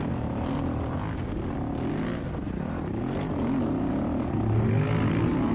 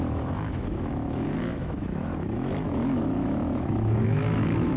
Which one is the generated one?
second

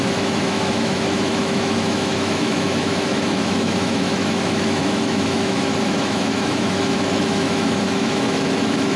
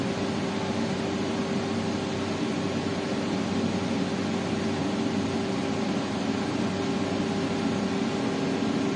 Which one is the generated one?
first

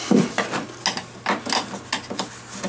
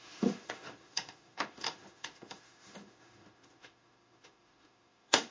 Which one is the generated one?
second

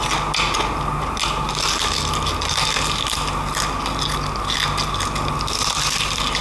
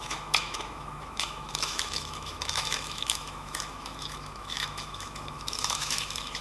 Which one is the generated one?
second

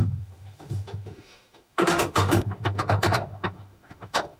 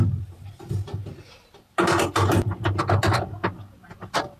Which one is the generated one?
first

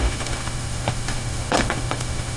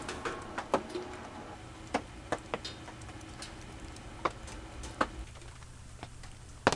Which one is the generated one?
first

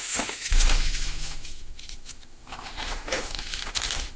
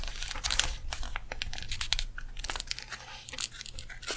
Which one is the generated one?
first